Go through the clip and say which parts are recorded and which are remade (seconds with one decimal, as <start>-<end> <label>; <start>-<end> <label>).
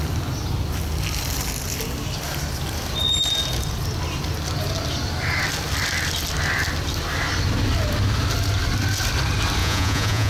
0.0-9.6 recorded; 9.6-10.3 remade